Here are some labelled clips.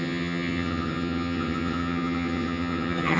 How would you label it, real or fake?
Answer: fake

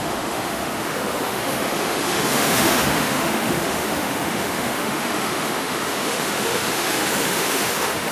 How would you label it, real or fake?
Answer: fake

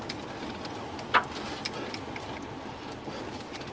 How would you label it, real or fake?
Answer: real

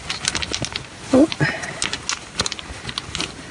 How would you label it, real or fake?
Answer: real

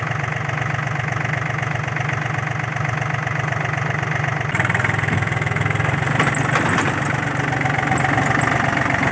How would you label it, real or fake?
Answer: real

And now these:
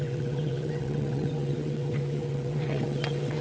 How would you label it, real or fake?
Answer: fake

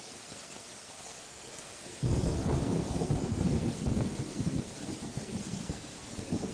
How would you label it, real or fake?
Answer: fake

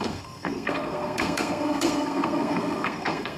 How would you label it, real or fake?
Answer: fake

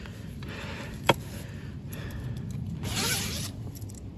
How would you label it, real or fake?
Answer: real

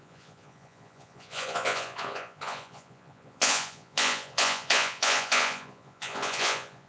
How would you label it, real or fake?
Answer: fake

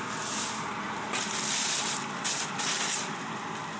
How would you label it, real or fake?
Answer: real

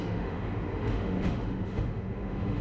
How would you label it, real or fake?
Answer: fake